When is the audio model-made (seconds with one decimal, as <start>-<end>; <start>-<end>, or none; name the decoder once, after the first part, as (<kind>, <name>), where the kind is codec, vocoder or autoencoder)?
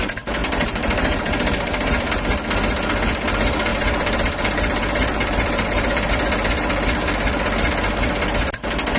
0.4-2.1 (vocoder, BigVGAN v2); 3.7-6.1